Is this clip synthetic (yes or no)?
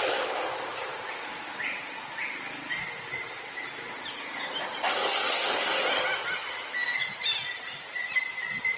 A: no